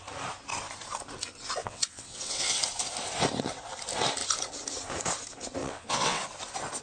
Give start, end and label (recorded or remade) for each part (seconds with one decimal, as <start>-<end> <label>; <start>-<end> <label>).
0.0-1.6 recorded; 1.6-2.6 remade; 2.6-5.6 recorded; 5.6-6.2 remade; 6.2-6.8 recorded